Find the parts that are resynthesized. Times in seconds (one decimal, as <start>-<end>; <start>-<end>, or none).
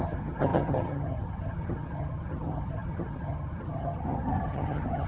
0.0-5.1